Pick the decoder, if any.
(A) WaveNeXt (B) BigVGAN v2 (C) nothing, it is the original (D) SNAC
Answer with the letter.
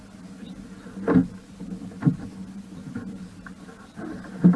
C